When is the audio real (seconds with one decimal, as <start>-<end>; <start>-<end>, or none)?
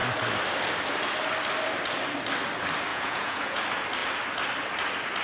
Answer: 0.0-2.9; 3.6-5.2